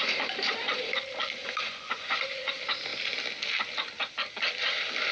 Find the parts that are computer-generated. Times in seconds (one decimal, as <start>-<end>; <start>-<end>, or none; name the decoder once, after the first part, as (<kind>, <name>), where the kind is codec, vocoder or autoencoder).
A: 1.4-2.5 (vocoder, Vocos)